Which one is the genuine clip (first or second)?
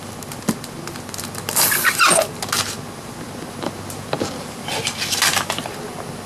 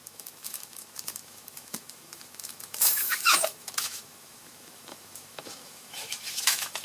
first